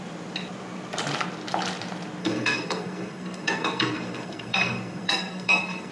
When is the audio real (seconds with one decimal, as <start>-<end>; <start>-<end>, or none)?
0.0-2.2